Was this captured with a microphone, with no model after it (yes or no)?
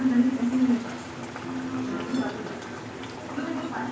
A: yes